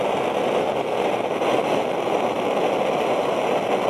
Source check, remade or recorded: recorded